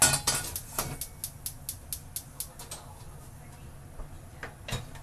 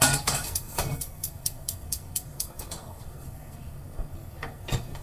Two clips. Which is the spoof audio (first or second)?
second